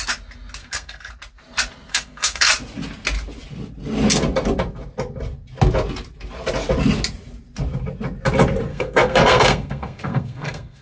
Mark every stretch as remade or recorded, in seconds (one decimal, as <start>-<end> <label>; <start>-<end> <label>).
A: 0.0-0.6 recorded; 0.6-1.1 remade; 1.1-1.9 recorded; 1.9-2.5 remade; 2.5-8.7 recorded; 8.7-10.8 remade